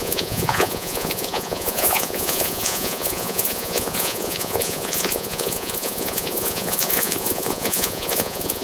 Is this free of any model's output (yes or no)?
no